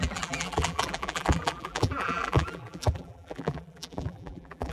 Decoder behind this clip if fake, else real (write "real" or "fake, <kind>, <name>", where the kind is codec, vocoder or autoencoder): fake, vocoder, BigVGAN v2